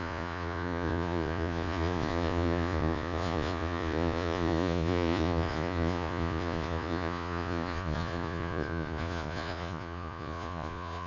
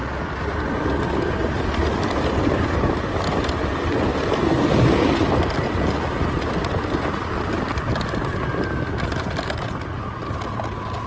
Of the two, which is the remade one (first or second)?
first